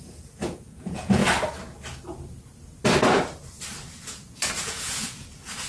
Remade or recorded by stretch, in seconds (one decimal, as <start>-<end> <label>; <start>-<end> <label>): 0.0-1.2 remade; 1.2-3.9 recorded; 3.9-5.7 remade